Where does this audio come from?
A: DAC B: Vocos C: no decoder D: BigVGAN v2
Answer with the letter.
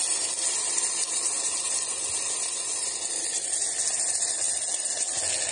C